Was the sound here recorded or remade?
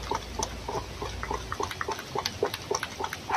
recorded